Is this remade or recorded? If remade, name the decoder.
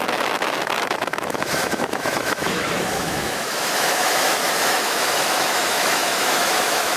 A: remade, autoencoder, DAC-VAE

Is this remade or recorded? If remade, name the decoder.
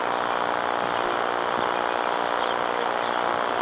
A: recorded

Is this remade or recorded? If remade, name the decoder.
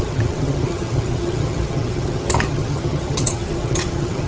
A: remade, vocoder, HiFi-GAN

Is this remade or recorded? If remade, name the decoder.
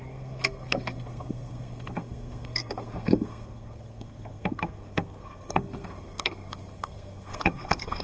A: remade, codec, SNAC